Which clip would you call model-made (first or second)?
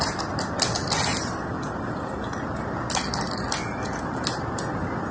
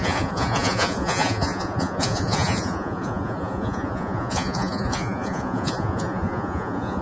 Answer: second